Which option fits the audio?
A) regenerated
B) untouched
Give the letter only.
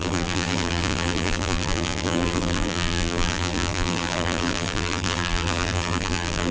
A